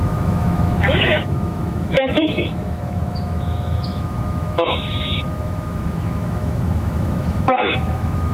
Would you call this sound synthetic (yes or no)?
yes